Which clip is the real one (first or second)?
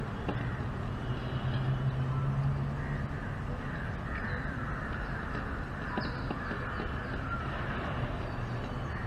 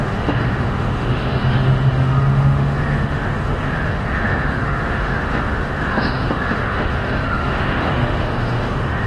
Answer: first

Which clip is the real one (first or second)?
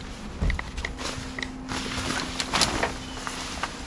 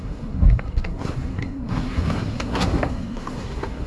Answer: first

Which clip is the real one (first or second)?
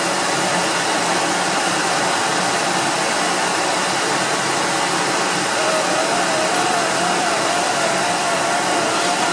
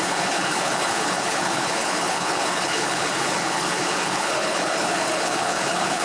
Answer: first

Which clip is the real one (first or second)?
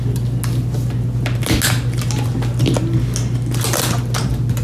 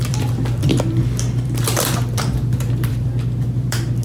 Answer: first